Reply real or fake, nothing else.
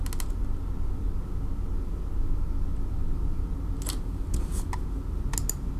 real